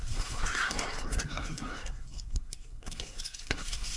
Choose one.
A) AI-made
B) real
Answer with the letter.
A